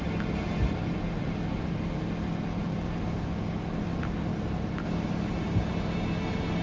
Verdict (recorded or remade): recorded